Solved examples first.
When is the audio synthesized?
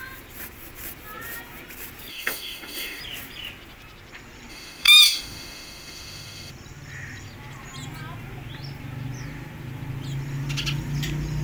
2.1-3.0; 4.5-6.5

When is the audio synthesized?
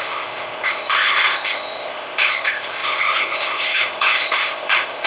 0.0-5.1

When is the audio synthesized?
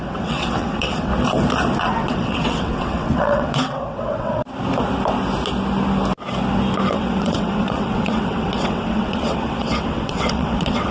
0.0-1.1; 1.8-4.4; 6.9-10.9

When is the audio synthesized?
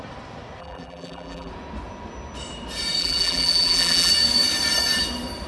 0.6-1.5; 3.0-4.1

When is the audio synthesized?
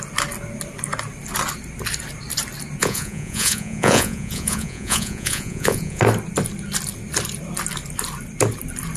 2.8-6.0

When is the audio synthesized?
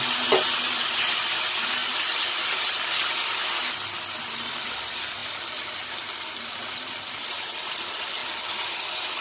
none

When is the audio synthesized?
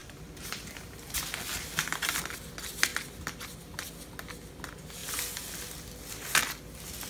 0.0-1.2